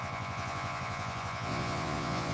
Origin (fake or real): fake